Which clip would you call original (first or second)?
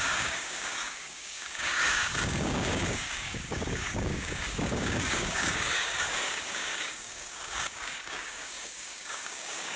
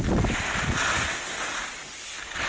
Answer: second